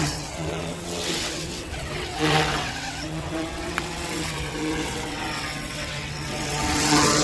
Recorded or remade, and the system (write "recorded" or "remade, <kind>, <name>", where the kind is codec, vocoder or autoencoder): remade, vocoder, WaveNeXt